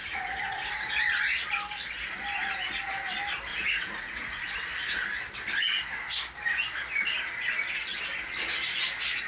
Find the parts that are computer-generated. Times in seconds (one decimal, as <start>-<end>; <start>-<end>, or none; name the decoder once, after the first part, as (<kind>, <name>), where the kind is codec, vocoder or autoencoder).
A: 0.0-0.9 (vocoder, Vocos); 3.5-4.7